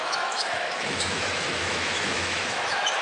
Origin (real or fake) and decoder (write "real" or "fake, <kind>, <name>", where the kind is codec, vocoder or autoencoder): fake, autoencoder, DAC-VAE